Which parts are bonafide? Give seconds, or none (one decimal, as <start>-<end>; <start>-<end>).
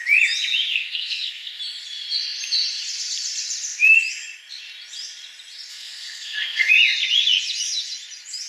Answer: 0.0-0.7; 1.6-5.7; 6.7-8.5